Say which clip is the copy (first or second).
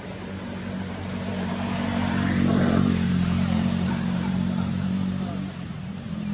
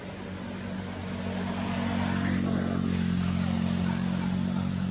first